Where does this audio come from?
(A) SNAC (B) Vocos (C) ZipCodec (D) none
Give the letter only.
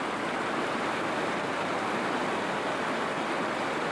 D